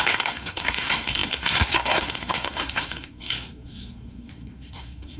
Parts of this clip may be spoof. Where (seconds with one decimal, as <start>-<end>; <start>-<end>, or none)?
0.0-5.2